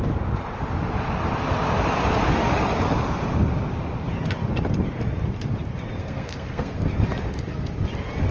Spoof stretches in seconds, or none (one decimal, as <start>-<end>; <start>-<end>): 6.0-6.8